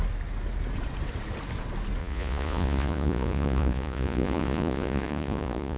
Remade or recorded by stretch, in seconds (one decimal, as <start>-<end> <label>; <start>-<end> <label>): 0.0-2.0 recorded; 2.0-5.8 remade